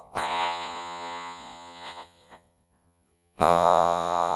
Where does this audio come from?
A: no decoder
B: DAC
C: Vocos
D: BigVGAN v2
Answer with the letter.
C